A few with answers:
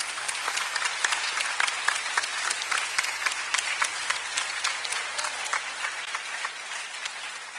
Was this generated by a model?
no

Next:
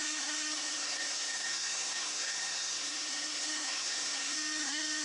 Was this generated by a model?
yes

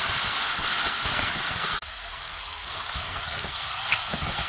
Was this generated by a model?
yes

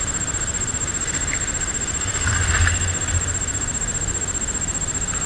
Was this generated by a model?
no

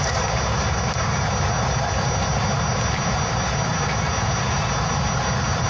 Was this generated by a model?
no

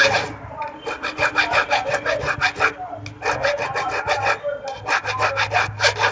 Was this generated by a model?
no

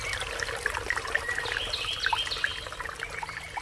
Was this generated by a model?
no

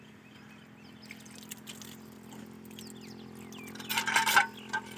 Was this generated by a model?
no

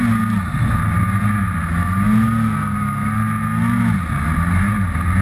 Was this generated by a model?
no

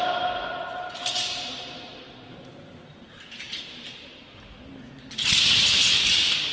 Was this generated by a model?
no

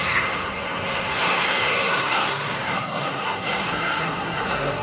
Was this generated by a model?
yes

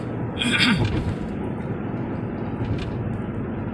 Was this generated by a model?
no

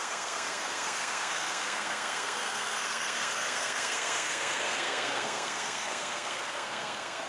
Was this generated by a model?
yes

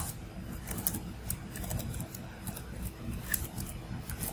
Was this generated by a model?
no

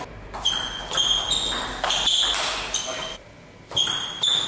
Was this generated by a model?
no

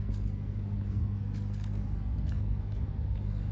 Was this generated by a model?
yes